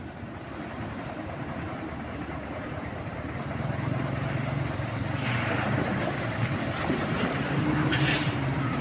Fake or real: fake